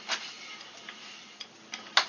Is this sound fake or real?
real